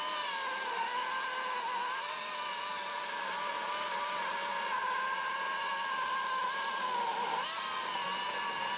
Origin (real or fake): real